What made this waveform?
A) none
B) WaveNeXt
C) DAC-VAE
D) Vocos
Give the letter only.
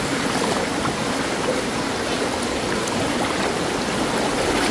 A